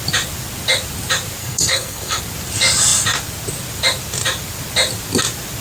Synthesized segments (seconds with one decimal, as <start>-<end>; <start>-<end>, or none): 1.4-2.2